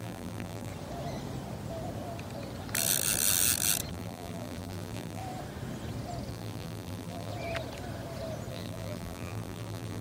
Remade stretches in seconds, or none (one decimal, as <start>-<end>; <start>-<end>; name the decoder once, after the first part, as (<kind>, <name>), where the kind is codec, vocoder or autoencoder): 0.0-0.7 (vocoder, BigVGAN v2); 3.9-5.2; 6.3-7.3; 8.5-10.0